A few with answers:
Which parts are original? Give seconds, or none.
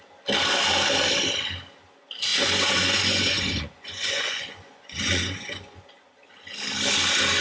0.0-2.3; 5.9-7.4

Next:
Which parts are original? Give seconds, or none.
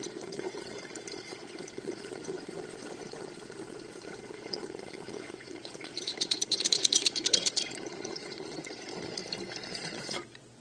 9.2-9.7